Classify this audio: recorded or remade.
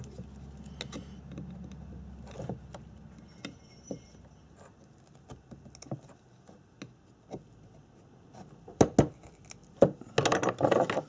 recorded